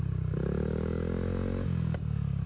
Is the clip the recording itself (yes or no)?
yes